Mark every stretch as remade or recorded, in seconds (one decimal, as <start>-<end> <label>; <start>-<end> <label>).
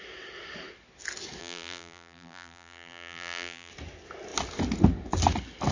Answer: 0.0-1.4 recorded; 1.4-3.7 remade; 3.7-5.7 recorded